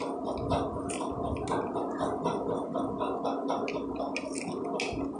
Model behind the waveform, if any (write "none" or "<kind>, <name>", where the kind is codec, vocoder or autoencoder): none